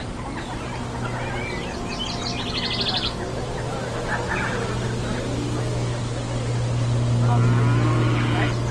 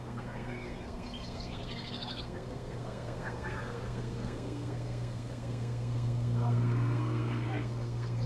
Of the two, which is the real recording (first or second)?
first